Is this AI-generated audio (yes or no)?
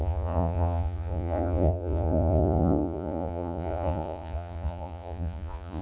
yes